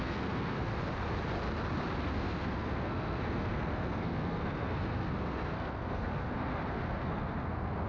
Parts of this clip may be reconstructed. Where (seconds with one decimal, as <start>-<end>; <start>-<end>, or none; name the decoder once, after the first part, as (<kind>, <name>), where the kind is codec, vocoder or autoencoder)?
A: 0.0-0.7 (codec, SNAC); 2.0-7.9